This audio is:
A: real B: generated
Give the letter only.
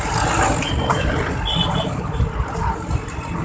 A